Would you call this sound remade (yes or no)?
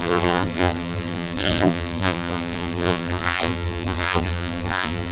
yes